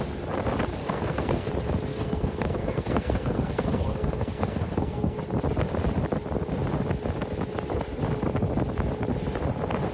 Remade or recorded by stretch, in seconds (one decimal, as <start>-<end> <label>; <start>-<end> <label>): 0.0-0.8 recorded; 0.8-1.5 remade; 1.5-1.9 recorded; 1.9-5.2 remade; 5.2-9.9 recorded